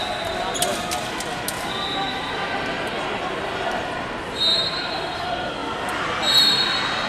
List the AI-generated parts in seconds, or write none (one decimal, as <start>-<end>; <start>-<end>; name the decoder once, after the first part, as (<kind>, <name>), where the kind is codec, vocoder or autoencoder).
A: none